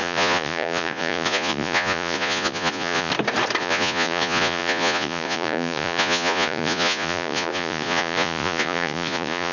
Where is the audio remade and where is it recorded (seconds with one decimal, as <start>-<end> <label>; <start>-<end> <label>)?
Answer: 0.0-3.1 remade; 3.1-3.6 recorded; 3.6-9.5 remade